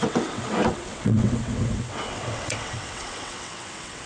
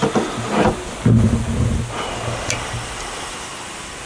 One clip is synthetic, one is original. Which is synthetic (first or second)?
first